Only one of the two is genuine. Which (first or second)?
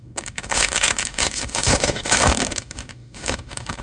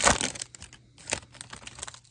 second